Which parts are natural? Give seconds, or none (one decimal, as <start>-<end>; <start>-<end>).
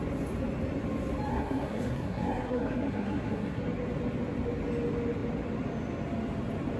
0.0-1.3; 3.6-6.8